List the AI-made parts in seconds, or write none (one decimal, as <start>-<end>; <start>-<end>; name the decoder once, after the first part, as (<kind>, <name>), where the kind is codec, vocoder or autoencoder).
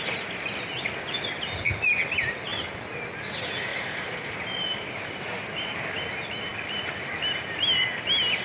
2.5-3.1 (vocoder, BigVGAN v2); 3.7-6.0